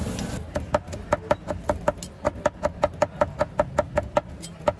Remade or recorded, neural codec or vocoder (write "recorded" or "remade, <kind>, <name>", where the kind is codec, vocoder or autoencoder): recorded